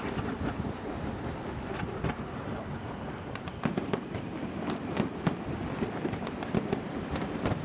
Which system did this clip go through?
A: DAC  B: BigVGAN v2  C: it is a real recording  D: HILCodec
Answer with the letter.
B